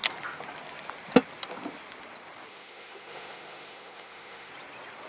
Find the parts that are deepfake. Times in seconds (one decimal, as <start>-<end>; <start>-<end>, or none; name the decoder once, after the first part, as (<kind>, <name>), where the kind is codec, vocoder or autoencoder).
2.5-4.5 (autoencoder, DAC-VAE)